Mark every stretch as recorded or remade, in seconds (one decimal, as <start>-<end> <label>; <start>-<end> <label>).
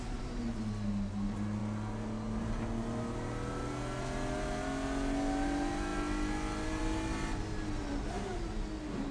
0.0-9.1 recorded